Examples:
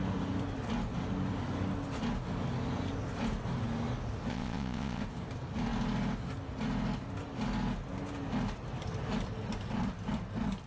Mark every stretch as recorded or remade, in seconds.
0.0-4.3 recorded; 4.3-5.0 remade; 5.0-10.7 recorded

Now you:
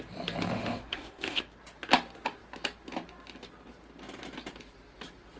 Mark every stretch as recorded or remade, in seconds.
0.0-0.5 recorded; 0.5-1.4 remade; 1.4-5.4 recorded